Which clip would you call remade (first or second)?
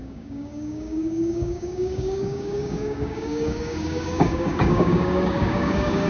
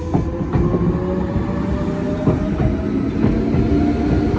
first